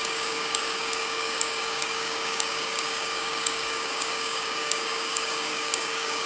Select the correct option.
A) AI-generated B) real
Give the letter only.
A